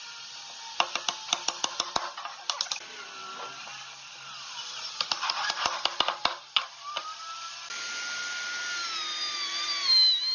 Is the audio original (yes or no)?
yes